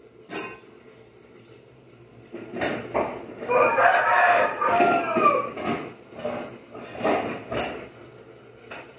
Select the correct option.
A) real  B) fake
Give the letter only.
A